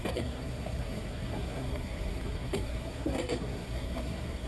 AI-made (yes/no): yes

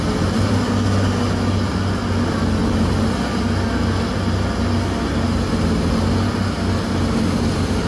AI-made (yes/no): no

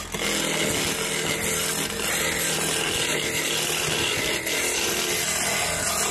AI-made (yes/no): no